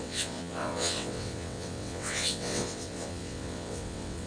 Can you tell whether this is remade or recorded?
remade